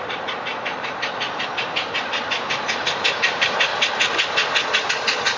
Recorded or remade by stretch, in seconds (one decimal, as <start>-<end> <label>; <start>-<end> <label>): 0.0-3.7 remade; 3.7-4.9 recorded; 4.9-5.4 remade